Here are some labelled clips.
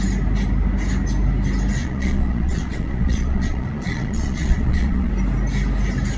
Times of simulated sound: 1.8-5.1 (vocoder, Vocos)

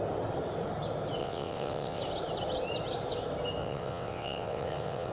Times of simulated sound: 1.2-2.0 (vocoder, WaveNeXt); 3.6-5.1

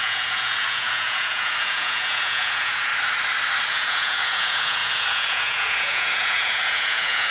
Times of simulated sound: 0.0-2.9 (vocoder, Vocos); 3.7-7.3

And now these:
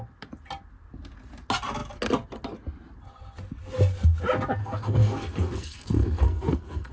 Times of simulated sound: 4.6-6.9 (codec, SNAC)

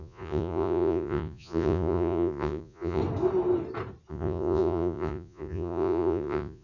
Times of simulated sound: 0.0-3.0 (vocoder, Vocos); 4.1-6.6